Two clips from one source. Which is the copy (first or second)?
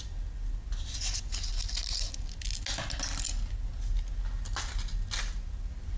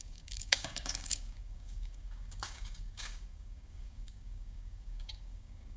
second